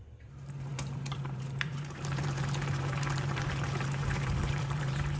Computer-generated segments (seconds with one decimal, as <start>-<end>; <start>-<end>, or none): 0.0-5.2